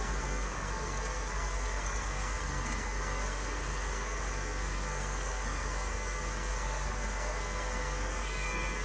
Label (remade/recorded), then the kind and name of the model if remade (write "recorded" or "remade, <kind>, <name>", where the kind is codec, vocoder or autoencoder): remade, codec, SNAC